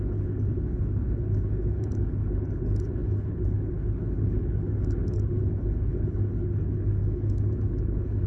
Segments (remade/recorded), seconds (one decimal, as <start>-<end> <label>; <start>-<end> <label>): 0.0-8.3 remade